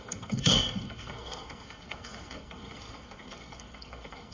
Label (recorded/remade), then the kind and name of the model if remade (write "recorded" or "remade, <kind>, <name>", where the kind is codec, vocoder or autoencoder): remade, codec, SNAC